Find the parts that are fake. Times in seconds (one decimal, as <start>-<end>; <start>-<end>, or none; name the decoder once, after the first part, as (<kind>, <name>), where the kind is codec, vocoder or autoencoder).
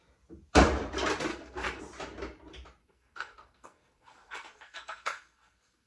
1.3-1.8 (codec, SNAC); 2.8-5.9